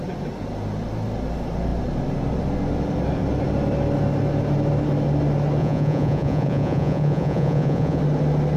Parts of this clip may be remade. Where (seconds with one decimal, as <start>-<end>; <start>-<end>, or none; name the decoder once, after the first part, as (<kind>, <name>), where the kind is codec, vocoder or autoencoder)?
5.6-8.0 (vocoder, Vocos)